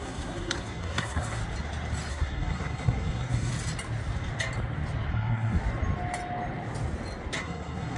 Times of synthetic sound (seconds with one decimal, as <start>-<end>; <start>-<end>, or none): 0.0-1.4; 2.1-3.5; 5.1-5.6; 7.4-8.0

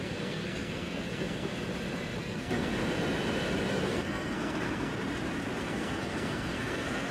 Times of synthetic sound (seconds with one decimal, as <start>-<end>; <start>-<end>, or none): 0.0-1.5; 2.2-2.7; 3.7-4.9; 5.6-7.1

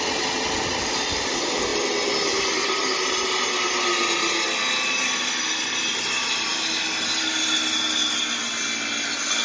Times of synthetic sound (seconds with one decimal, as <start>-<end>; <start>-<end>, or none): none

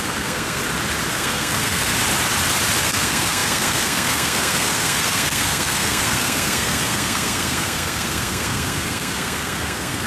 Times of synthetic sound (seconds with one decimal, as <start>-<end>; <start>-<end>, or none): 0.0-0.6; 1.1-1.9; 2.8-10.1